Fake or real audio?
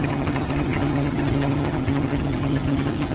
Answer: fake